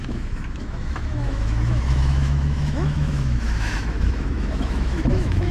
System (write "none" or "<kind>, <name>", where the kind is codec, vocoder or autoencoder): autoencoder, DAC-VAE